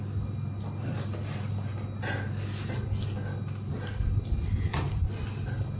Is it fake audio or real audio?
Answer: real